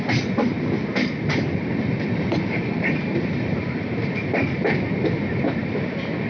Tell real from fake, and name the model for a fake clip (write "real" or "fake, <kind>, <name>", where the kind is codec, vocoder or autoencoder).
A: fake, vocoder, BigVGAN v2